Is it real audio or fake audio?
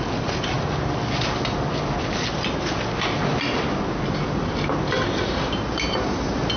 real